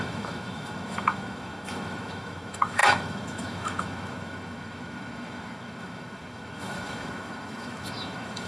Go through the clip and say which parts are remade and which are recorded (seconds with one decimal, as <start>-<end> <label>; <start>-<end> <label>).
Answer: 0.0-8.5 remade